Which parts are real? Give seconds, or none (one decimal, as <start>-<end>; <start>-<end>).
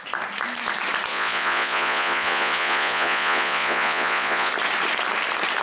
0.0-1.1; 4.5-5.6